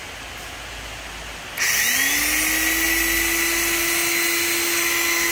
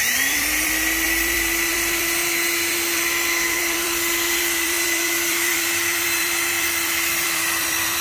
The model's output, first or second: second